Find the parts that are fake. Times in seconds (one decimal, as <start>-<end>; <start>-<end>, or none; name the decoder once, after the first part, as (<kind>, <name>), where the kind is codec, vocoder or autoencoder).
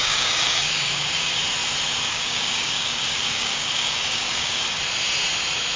0.0-1.4 (codec, DAC); 2.1-4.8